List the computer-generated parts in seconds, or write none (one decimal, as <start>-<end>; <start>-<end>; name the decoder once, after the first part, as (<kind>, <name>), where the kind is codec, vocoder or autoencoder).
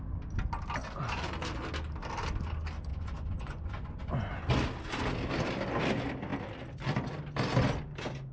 2.9-4.0 (vocoder, Vocos)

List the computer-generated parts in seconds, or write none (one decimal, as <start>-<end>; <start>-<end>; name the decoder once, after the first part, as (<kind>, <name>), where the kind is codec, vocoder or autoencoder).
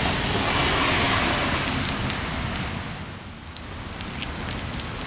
none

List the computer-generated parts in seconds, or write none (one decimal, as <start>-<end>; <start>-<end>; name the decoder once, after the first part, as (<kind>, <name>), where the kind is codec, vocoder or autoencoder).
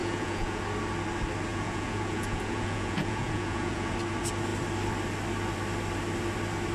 0.0-0.6 (vocoder, Vocos); 1.5-3.9